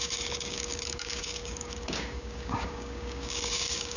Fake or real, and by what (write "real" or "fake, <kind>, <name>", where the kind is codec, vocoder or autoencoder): fake, codec, DAC